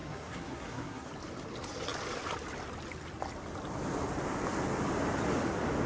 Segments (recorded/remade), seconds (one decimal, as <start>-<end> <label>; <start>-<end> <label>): 0.0-1.1 remade; 1.1-5.9 recorded